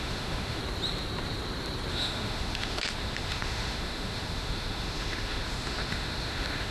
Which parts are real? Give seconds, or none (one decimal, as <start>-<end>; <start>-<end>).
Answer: 0.6-1.9